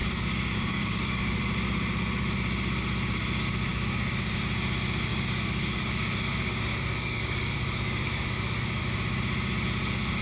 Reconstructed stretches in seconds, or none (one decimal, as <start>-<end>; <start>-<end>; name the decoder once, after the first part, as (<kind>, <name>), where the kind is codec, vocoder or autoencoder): 0.0-1.4 (codec, DAC); 3.7-4.4; 5.1-8.8